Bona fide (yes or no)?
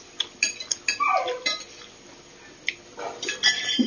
yes